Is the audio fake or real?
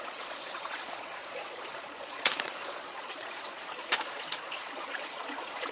fake